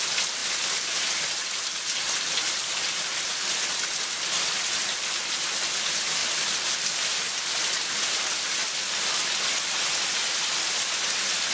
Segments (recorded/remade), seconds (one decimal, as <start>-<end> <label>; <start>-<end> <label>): 0.0-6.2 recorded; 6.2-7.0 remade; 7.0-11.5 recorded